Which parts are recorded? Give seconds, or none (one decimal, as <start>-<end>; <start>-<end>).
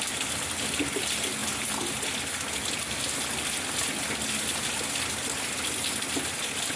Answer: 0.0-6.8